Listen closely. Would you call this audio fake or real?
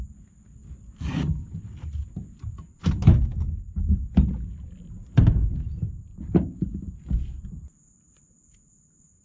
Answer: real